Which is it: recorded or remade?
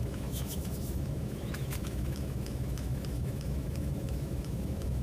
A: remade